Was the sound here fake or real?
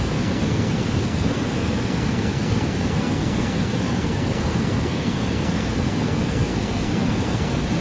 fake